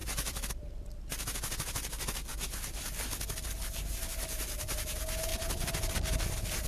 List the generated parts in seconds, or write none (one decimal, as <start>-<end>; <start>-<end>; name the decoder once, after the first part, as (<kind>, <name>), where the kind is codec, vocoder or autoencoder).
0.0-1.0 (vocoder, BigVGAN v2); 5.3-5.9